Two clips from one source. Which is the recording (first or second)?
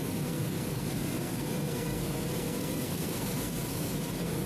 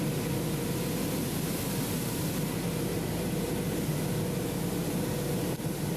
second